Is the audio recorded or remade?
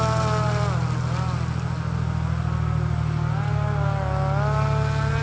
recorded